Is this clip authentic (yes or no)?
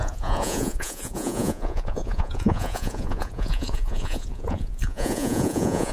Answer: no